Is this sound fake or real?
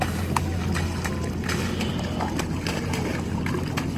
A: real